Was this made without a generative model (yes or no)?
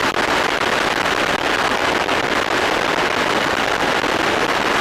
yes